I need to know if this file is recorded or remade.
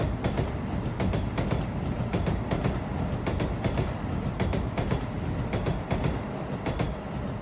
recorded